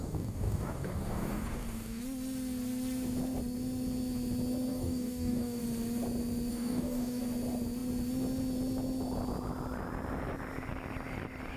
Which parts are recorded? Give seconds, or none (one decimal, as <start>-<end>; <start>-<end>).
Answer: 2.0-4.7; 5.6-6.5; 7.2-11.6